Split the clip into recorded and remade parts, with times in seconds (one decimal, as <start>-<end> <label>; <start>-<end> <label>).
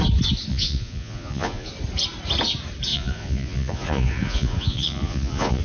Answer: 0.0-0.5 recorded; 0.5-1.7 remade; 1.7-2.9 recorded; 2.9-5.6 remade